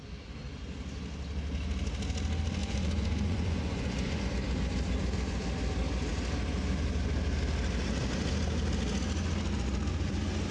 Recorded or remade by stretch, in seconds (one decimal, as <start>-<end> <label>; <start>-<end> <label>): 0.0-2.6 recorded; 2.6-4.3 remade; 4.3-10.5 recorded